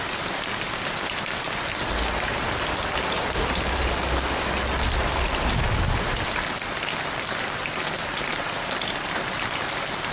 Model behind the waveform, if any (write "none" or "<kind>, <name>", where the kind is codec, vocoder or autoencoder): none